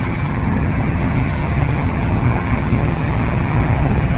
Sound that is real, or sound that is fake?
fake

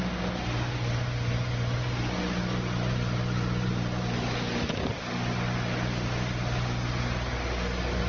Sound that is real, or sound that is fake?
real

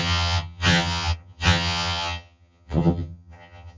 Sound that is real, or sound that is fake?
fake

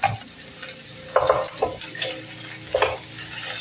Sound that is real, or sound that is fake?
real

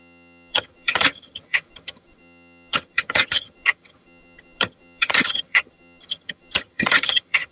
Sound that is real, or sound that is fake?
fake